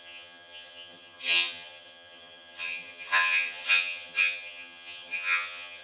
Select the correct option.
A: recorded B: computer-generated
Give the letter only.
B